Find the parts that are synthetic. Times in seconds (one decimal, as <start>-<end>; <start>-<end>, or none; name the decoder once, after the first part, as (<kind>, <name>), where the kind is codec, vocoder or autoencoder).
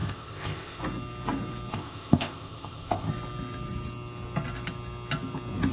0.0-0.8 (codec, ZipCodec); 1.7-3.1